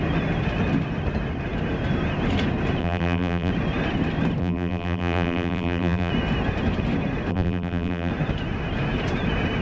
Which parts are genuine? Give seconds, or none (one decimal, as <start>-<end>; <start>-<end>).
0.0-2.8; 3.5-4.4; 6.1-7.3; 8.1-9.6